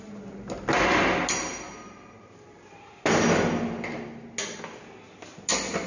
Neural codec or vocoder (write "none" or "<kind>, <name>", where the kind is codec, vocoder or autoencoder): none